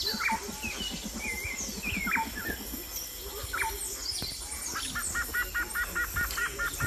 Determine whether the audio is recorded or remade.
recorded